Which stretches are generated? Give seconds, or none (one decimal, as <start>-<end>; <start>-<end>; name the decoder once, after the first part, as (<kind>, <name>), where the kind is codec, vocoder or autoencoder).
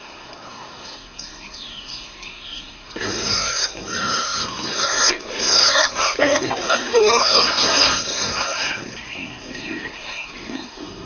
0.0-11.1 (codec, SNAC)